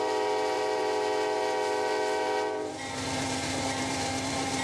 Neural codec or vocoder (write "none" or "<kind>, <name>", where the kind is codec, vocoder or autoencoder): vocoder, BigVGAN v2